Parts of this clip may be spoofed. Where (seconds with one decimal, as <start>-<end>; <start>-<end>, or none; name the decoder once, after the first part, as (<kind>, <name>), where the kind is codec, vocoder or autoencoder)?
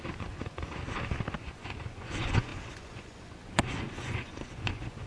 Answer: 0.0-0.8 (vocoder, Vocos); 1.4-5.1